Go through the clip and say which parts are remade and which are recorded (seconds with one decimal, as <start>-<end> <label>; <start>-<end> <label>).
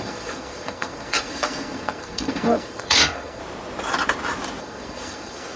0.0-3.4 remade; 3.4-4.6 recorded; 4.6-5.6 remade